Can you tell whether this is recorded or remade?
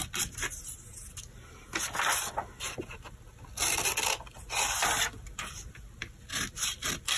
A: remade